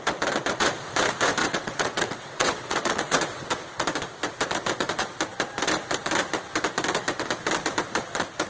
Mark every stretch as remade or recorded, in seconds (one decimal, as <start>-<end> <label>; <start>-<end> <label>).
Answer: 0.0-1.4 recorded; 1.4-3.5 remade; 3.5-8.5 recorded